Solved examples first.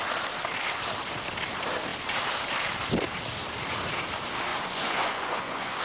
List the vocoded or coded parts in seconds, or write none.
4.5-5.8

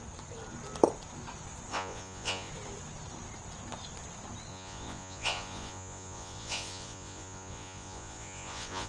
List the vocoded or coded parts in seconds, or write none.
1.7-2.5; 4.5-8.9

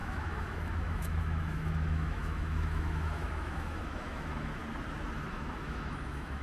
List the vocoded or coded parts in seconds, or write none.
0.0-4.6; 5.3-6.4

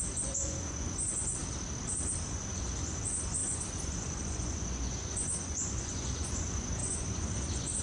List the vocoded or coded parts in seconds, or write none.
0.0-1.4; 2.3-7.8

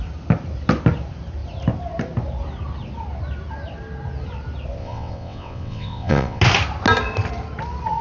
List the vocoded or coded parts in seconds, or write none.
4.8-6.4

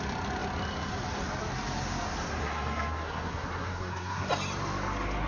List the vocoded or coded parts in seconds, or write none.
2.4-4.3